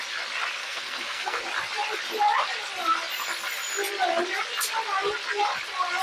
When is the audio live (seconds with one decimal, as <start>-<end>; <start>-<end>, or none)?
0.0-0.6; 1.4-6.0